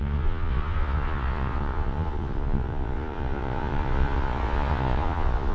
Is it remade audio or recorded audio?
remade